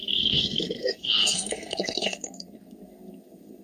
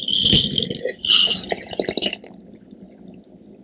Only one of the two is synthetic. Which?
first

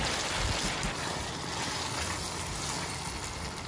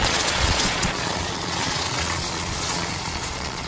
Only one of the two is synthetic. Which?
second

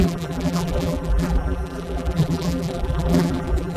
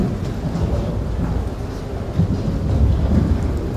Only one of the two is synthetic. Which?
first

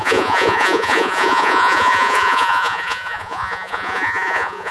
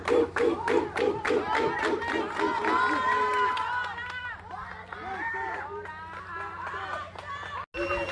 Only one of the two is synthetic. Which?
first